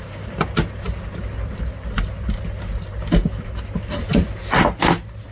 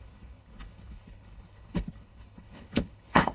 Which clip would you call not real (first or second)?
second